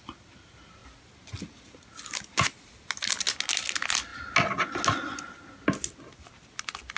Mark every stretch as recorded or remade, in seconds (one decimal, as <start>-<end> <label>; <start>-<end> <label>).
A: 0.0-7.0 recorded